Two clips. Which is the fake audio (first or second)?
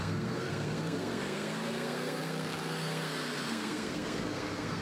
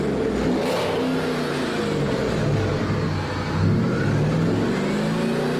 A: first